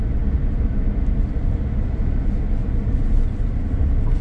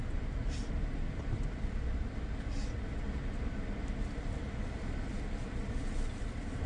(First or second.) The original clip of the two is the first